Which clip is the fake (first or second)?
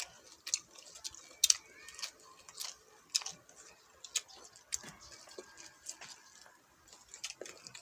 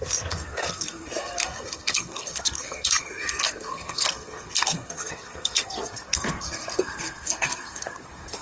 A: second